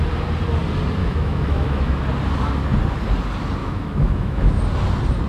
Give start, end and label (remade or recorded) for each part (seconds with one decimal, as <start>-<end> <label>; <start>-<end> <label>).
0.0-1.0 recorded; 1.0-2.0 remade; 2.0-3.6 recorded; 3.6-4.6 remade; 4.6-5.3 recorded